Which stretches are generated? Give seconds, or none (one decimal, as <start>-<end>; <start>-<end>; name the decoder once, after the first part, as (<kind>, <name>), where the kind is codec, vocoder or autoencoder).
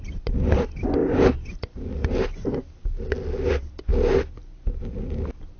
none